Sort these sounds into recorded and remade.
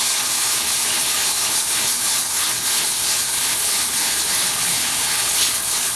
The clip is remade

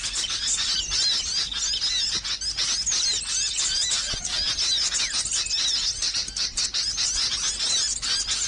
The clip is recorded